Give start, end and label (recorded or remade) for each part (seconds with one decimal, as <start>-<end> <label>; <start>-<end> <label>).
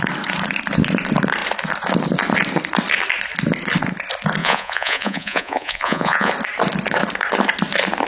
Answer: 0.0-4.4 recorded; 4.4-6.3 remade; 6.3-8.1 recorded